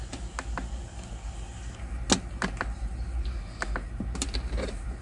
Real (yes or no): yes